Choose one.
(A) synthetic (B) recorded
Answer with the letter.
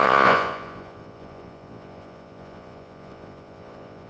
A